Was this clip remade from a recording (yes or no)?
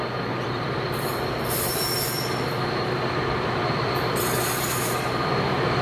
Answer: yes